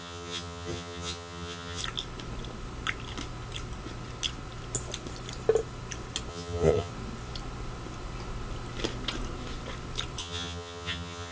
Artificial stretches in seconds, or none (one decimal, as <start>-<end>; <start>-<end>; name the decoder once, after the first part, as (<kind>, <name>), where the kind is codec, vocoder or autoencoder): 0.0-1.8 (vocoder, HiFi-GAN); 6.3-6.9; 10.2-11.3